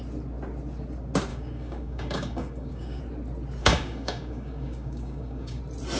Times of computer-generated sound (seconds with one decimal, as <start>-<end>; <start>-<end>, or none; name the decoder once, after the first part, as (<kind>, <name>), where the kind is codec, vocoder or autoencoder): 1.3-3.0 (codec, DAC); 3.6-5.6